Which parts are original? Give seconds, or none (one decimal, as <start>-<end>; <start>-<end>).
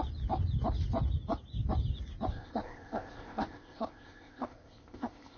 0.0-2.3